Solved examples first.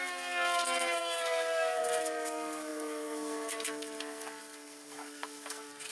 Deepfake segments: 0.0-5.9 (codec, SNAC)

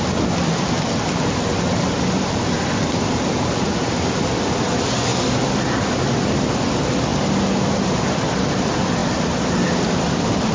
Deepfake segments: none

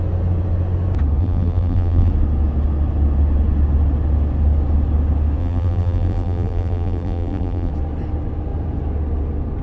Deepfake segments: 1.2-2.1 (vocoder, BigVGAN v2); 5.4-7.7

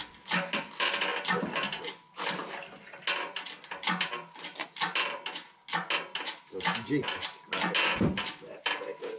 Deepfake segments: none

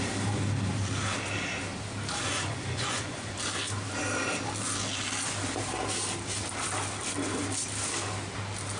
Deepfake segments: 2.2-3.3 (vocoder, Vocos)